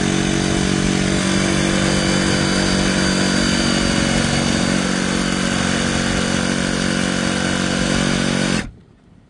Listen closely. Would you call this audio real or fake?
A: real